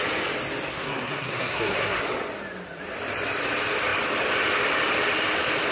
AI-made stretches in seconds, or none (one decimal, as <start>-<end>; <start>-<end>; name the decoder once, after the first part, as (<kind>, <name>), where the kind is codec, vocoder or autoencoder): 0.7-2.0 (codec, SNAC)